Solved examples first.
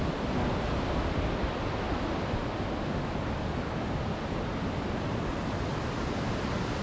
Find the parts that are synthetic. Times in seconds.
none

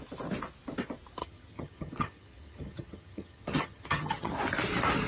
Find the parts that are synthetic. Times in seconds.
1.2-4.3 (vocoder, HiFi-GAN)

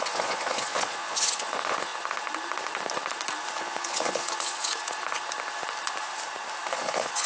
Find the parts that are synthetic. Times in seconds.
0.0-1.9 (vocoder, Vocos); 3.6-4.7; 6.7-7.3

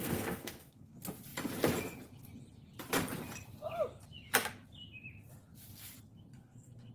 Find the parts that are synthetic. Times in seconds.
0.0-0.9 (codec, SNAC); 6.3-6.9

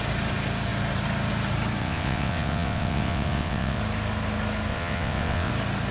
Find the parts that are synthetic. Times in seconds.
1.8-3.8 (vocoder, WaveNeXt); 4.7-5.5

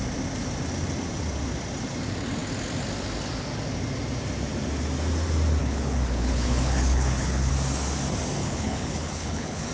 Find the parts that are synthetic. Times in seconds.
5.6-7.5 (codec, HILCodec); 8.4-9.7

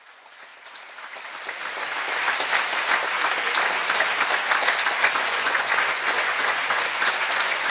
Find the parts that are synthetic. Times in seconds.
0.0-0.5 (vocoder, Vocos); 5.1-7.7

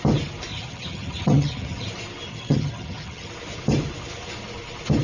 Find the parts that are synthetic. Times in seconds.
0.5-1.9 (vocoder, HiFi-GAN); 2.3-3.3